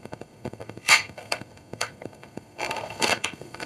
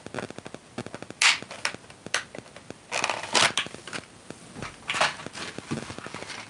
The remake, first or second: first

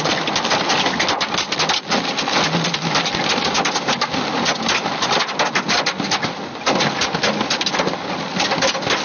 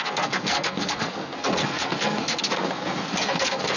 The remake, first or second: second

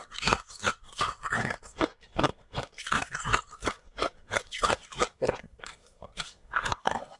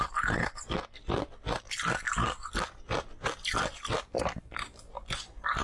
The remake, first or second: first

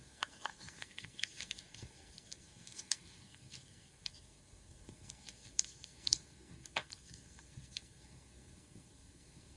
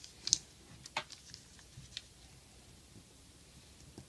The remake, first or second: first